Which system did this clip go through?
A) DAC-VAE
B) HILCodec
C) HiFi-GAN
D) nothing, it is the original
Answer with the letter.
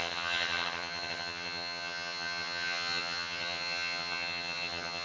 C